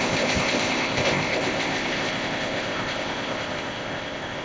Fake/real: fake